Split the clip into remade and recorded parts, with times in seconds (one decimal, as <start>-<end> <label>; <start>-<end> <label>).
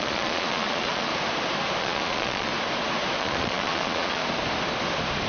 0.0-1.1 remade; 1.1-1.8 recorded; 1.8-2.5 remade; 2.5-3.2 recorded; 3.2-4.2 remade; 4.2-5.3 recorded